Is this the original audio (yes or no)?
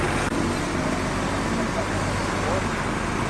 yes